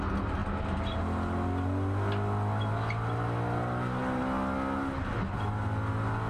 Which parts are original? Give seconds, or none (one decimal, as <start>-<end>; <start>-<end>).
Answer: 0.0-6.3